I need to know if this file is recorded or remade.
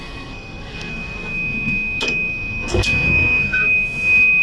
remade